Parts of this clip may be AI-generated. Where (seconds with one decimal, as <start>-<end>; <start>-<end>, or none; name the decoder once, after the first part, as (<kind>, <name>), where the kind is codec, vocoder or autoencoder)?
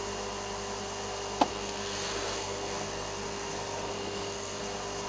1.5-4.6 (codec, SNAC)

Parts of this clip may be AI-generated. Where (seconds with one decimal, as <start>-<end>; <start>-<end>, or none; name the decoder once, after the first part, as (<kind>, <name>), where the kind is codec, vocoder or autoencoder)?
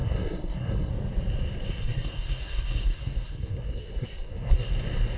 0.0-0.9 (codec, SNAC); 1.8-4.7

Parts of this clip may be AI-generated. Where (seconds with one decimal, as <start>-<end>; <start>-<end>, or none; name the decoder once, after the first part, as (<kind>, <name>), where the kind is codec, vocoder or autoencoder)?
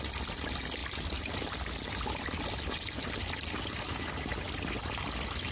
none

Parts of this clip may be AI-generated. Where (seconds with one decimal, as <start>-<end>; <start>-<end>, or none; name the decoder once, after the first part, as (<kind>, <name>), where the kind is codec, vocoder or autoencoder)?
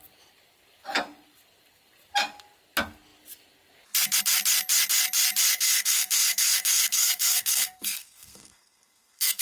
5.5-9.4 (codec, SNAC)